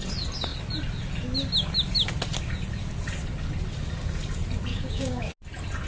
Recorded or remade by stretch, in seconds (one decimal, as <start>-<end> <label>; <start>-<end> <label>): 0.0-4.7 recorded; 4.7-5.3 remade; 5.3-5.9 recorded